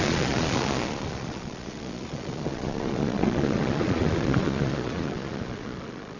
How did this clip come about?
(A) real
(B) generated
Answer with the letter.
B